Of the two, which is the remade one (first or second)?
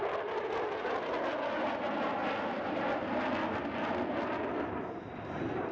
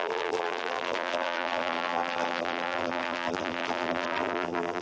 second